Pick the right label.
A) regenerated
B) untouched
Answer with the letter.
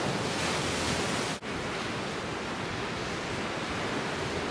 B